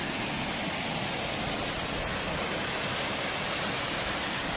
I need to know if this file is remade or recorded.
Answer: recorded